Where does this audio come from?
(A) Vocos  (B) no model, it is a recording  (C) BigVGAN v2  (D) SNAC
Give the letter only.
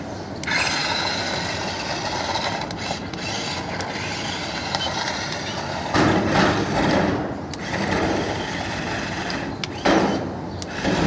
B